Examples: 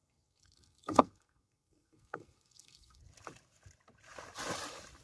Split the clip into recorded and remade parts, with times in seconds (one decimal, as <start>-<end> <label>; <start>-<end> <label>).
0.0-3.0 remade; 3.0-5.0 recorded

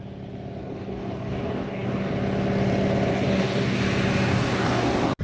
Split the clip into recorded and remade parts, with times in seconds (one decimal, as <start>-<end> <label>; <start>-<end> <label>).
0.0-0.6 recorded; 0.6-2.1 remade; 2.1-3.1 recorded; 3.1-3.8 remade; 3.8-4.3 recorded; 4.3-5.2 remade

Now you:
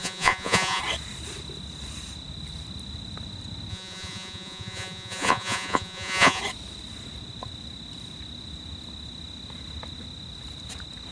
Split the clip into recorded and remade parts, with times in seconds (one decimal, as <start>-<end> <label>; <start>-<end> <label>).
0.0-0.8 remade; 0.8-3.7 recorded; 3.7-6.4 remade; 6.4-11.1 recorded

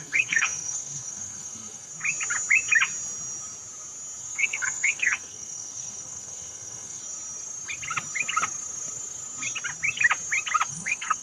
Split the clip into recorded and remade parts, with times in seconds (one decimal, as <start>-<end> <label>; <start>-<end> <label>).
0.0-1.9 remade; 1.9-4.2 recorded; 4.2-7.0 remade; 7.0-10.7 recorded; 10.7-11.2 remade

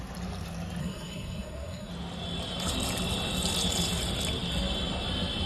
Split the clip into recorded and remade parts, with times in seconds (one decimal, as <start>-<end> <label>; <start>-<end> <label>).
0.0-0.8 recorded; 0.8-1.9 remade; 1.9-5.5 recorded